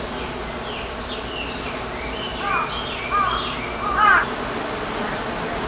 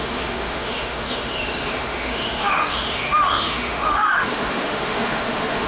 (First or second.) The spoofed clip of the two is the second